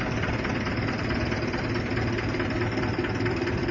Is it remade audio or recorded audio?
remade